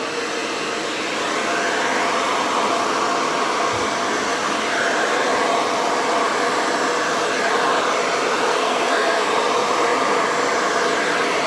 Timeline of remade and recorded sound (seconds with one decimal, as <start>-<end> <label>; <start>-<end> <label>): 0.0-8.5 recorded; 8.5-9.3 remade; 9.3-11.5 recorded